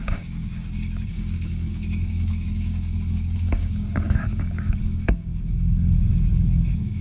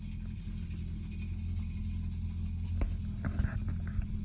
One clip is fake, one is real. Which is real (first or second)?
second